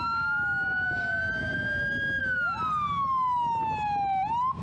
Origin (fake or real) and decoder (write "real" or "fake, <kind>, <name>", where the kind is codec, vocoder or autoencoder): real